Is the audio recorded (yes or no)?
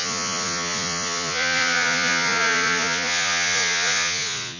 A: no